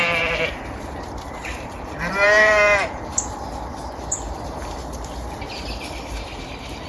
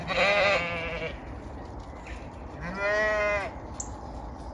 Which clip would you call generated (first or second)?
first